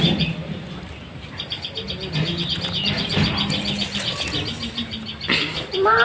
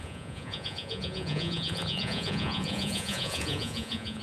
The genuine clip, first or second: first